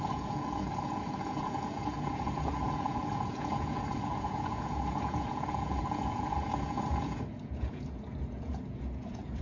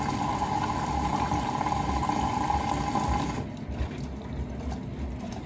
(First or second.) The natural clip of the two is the second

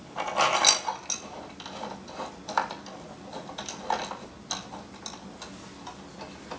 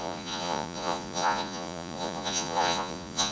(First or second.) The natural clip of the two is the first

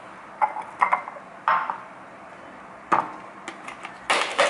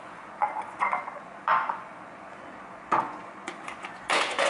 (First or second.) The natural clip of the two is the first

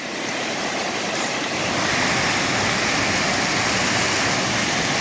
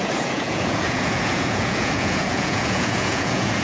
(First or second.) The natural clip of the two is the first